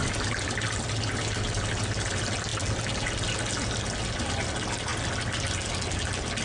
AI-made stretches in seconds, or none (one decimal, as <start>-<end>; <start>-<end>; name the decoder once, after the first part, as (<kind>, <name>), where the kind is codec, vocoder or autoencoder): none